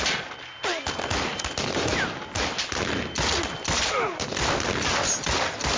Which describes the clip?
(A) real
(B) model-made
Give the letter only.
A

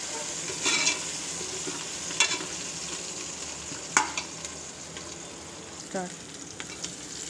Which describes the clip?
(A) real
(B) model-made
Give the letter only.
A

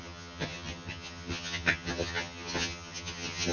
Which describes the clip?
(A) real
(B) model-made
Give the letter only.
B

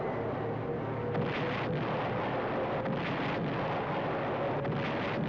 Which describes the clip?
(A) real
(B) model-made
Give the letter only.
A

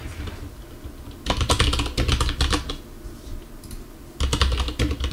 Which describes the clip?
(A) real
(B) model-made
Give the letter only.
A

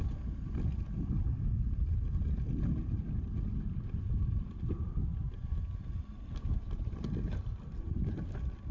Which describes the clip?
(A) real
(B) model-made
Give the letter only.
A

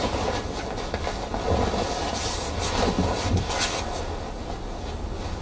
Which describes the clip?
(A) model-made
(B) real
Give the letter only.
B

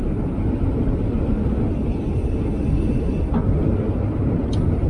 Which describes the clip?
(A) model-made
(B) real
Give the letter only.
B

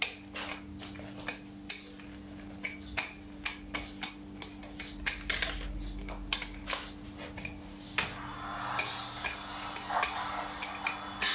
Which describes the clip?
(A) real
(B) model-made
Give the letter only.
A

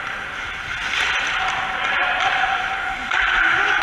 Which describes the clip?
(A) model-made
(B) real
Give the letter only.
B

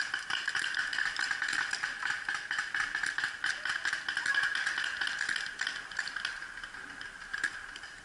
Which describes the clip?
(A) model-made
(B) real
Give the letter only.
B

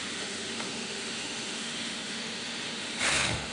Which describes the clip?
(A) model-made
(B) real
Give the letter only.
A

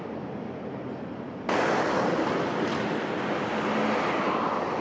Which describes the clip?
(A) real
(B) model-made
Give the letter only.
A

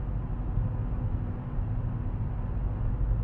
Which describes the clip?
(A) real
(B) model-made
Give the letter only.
A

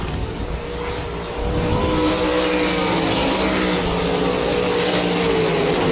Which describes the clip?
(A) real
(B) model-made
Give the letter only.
A